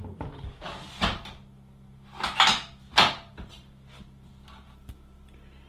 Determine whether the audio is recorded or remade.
recorded